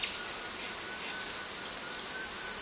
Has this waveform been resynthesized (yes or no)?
no